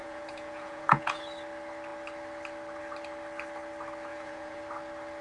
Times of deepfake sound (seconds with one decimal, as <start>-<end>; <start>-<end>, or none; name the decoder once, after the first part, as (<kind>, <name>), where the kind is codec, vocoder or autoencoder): 0.0-1.2 (vocoder, Vocos); 4.1-4.6